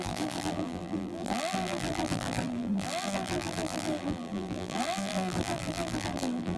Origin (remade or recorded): remade